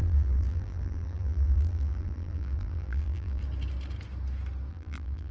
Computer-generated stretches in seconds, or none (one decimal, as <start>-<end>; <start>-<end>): 0.0-3.4; 4.7-5.3